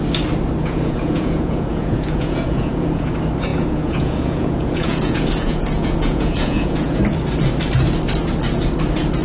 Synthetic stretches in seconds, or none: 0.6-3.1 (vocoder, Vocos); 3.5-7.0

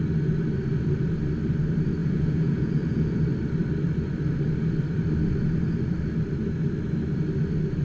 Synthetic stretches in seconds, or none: 2.0-3.2 (vocoder, Vocos)

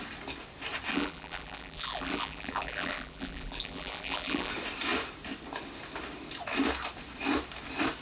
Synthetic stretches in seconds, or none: 0.9-4.5 (vocoder, BigVGAN v2)

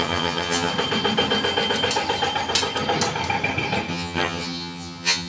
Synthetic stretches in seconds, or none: 0.0-0.7 (vocoder, HiFi-GAN); 3.9-5.3

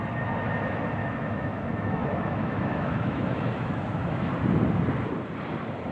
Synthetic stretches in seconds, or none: 1.0-4.3 (autoencoder, DAC-VAE)

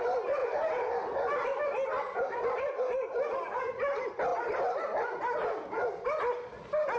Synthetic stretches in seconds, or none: none

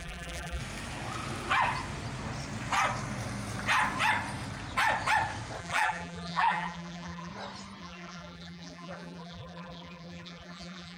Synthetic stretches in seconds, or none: 0.0-0.6 (vocoder, BigVGAN v2); 5.6-7.3; 7.8-11.0